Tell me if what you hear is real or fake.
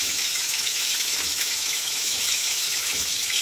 fake